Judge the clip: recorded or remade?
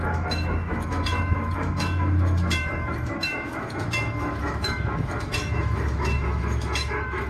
remade